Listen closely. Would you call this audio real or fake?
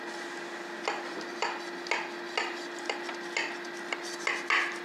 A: real